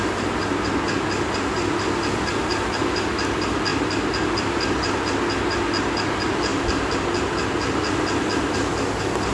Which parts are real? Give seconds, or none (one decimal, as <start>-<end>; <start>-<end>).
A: 0.0-9.3